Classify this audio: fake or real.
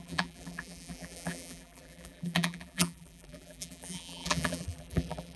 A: fake